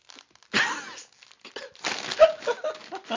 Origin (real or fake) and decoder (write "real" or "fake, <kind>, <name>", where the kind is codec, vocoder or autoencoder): real